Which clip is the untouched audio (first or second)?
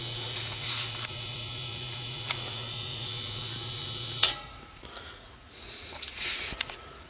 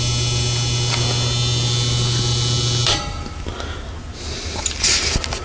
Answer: second